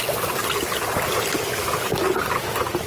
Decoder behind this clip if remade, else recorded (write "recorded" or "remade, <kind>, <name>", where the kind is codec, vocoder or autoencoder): recorded